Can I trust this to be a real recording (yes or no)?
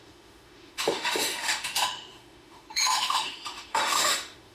no